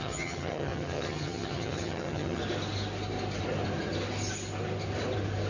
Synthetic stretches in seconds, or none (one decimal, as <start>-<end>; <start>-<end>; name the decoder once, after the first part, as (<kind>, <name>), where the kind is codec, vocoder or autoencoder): 0.0-2.4 (vocoder, HiFi-GAN)